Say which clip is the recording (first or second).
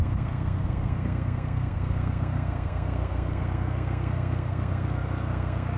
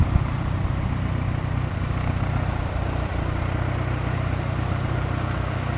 second